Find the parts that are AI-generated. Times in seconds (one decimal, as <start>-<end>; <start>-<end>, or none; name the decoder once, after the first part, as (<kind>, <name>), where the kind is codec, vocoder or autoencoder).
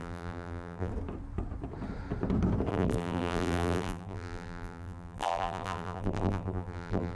0.0-0.9 (vocoder, BigVGAN v2); 2.7-7.2